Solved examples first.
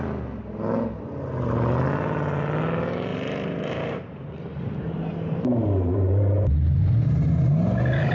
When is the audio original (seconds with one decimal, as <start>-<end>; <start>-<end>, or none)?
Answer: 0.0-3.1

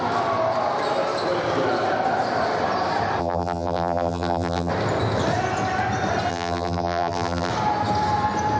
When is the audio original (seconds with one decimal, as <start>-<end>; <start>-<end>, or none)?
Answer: 0.0-3.2; 4.7-6.3; 7.5-8.6

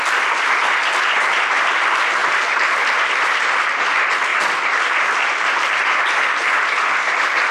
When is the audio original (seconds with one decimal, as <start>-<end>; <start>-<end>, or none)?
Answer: 0.0-4.3